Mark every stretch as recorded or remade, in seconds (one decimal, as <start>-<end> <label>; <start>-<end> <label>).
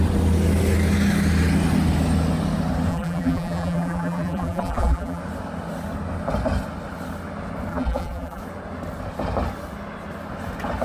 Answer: 0.0-2.9 recorded; 2.9-5.2 remade; 5.2-7.7 recorded; 7.7-8.4 remade; 8.4-10.8 recorded